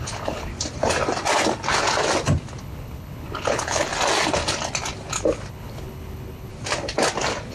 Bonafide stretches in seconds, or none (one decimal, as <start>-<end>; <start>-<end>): 0.5-2.6; 3.9-5.5; 6.5-7.5